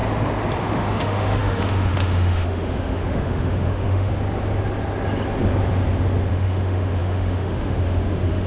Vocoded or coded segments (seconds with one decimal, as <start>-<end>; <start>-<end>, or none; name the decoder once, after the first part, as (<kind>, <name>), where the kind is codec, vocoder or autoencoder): 0.6-4.1 (autoencoder, DAC-VAE); 6.3-8.5